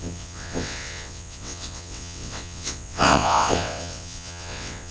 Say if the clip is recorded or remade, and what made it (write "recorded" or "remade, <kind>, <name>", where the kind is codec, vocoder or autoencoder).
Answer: remade, vocoder, WaveNeXt